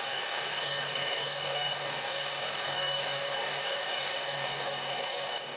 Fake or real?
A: fake